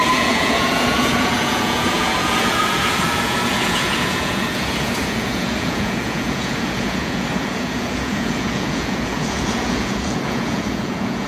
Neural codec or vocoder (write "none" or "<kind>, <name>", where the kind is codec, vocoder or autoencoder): vocoder, Vocos